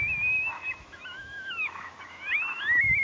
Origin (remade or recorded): remade